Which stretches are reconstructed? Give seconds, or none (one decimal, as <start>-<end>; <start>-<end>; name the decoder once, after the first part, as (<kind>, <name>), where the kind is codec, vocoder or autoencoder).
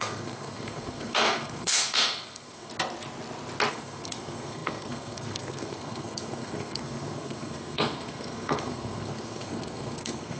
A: 0.0-2.7 (codec, SNAC); 3.7-10.4